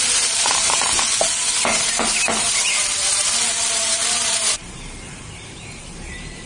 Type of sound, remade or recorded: remade